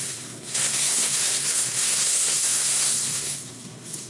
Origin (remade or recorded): remade